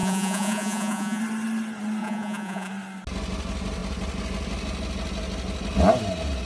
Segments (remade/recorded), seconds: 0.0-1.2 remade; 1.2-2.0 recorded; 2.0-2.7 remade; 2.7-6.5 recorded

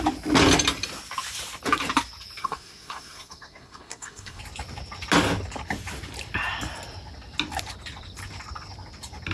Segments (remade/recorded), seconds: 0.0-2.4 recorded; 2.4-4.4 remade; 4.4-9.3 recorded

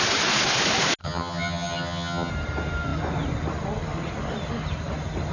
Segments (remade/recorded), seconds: 0.0-1.0 recorded; 1.0-2.3 remade; 2.3-5.3 recorded